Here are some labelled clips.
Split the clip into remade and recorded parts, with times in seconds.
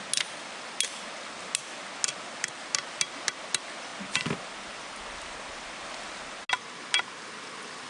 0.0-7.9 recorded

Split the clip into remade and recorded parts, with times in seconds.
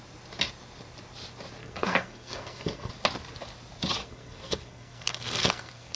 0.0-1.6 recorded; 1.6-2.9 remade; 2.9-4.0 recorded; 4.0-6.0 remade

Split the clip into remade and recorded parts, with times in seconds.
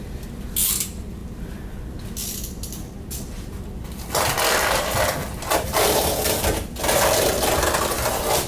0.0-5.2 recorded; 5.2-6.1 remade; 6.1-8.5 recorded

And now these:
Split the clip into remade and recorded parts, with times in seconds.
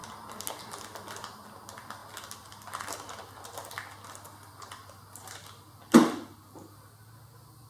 0.0-7.7 recorded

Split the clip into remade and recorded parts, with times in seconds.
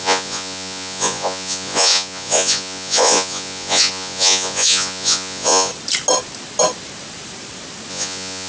0.0-5.7 remade; 5.7-7.9 recorded; 7.9-8.5 remade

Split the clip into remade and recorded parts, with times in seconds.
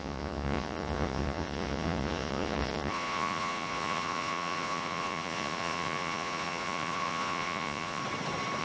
0.0-8.0 remade; 8.0-8.6 recorded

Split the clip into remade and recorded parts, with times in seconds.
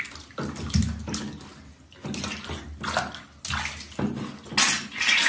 0.0-5.3 recorded